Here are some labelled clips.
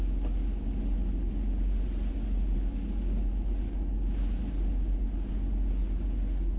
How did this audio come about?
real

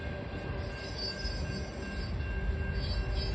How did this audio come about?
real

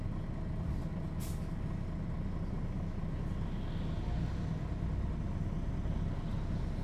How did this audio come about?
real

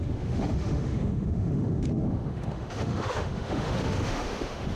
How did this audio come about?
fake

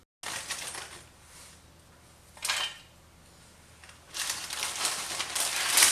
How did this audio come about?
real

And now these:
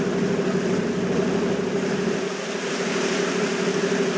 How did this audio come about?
real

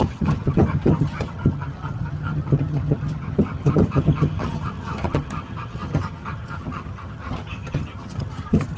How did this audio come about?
fake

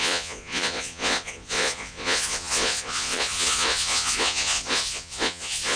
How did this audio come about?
fake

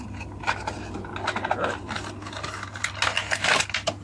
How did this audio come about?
real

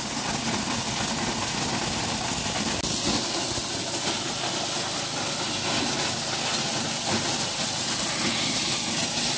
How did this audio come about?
real